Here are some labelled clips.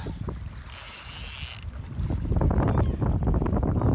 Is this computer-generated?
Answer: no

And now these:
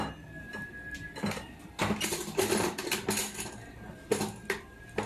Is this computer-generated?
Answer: no